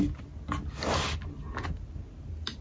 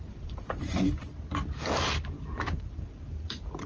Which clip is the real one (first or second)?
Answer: first